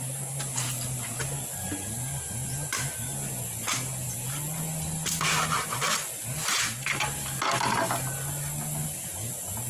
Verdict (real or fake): real